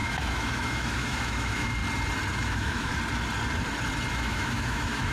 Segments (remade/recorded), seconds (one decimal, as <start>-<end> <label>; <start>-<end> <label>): 0.0-1.8 remade; 1.8-2.3 recorded; 2.3-2.9 remade; 2.9-4.1 recorded; 4.1-5.1 remade